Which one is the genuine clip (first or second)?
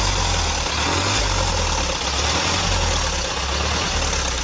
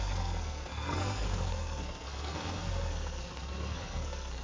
first